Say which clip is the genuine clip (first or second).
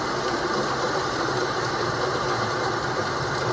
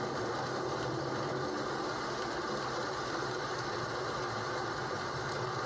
second